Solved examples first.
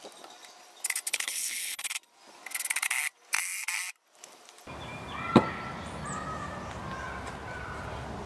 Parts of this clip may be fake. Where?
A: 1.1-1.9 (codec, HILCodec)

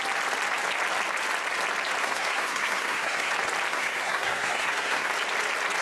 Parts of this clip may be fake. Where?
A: 2.0-3.3 (codec, SNAC); 3.7-5.1

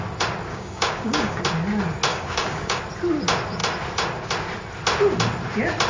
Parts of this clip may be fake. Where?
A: 0.5-1.4 (codec, DAC); 2.1-2.8

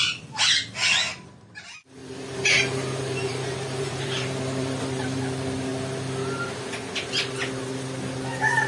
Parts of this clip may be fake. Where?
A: 2.0-5.2 (vocoder, BigVGAN v2)

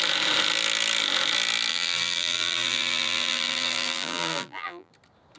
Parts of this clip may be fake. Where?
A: 1.7-4.9 (vocoder, BigVGAN v2)

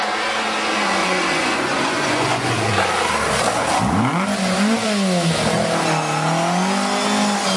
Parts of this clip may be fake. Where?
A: 1.0-2.7 (vocoder, Vocos)

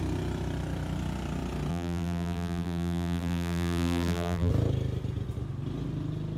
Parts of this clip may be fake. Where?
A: 1.7-4.5 (vocoder, BigVGAN v2)

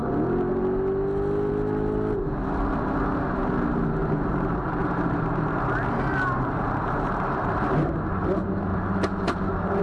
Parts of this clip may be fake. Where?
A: 4.0-7.9 (vocoder, BigVGAN v2); 8.7-9.8